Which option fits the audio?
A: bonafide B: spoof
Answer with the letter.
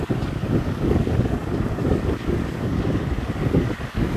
B